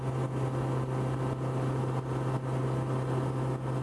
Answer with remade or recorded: recorded